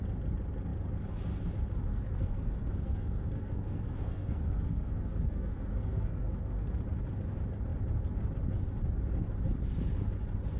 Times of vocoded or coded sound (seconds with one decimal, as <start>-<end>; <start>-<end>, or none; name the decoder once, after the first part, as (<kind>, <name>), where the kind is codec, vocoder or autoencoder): 1.9-6.8 (codec, SNAC)